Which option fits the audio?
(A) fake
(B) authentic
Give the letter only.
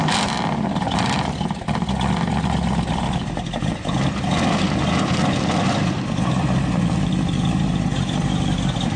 B